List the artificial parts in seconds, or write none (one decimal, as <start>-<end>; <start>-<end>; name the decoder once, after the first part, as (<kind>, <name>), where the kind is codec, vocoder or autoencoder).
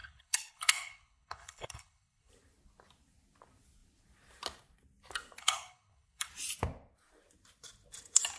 0.0-2.3 (codec, HILCodec); 5.4-6.3